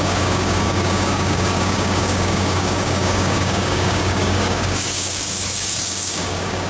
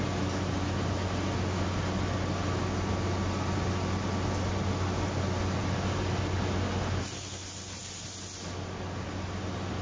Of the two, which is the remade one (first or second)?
first